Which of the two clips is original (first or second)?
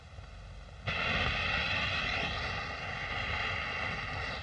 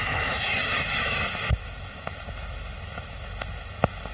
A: first